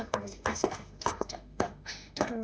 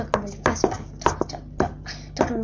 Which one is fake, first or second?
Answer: first